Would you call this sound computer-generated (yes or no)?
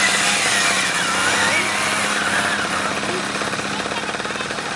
no